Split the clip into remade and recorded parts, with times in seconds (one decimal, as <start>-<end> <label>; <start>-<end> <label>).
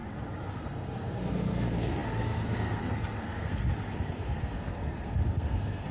0.0-0.5 recorded; 0.5-3.6 remade; 3.6-4.1 recorded; 4.1-5.9 remade